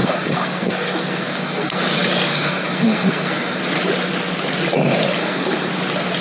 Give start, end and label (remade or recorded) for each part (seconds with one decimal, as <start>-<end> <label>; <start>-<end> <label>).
0.0-1.8 remade; 1.8-2.3 recorded; 2.3-3.6 remade; 3.6-5.2 recorded; 5.2-5.7 remade; 5.7-6.2 recorded